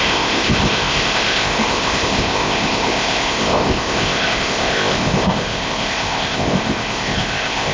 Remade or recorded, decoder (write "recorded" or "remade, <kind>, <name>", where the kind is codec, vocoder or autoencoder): remade, codec, ZipCodec